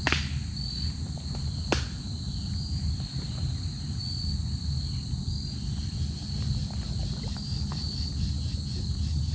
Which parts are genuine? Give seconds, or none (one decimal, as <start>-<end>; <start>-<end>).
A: 0.0-9.3